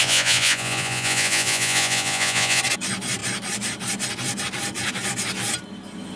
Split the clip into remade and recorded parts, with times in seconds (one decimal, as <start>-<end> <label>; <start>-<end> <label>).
0.0-2.6 remade; 2.6-6.2 recorded